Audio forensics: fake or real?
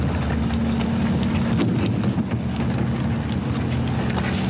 real